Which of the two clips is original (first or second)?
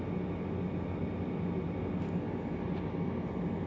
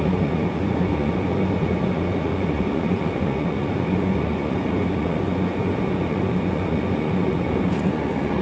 first